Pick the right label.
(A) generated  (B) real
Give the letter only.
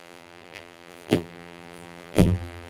A